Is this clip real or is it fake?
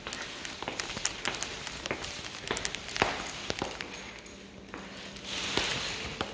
real